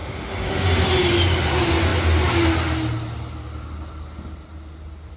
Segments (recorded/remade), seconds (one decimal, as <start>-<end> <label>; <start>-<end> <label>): 0.0-0.7 remade; 0.7-5.2 recorded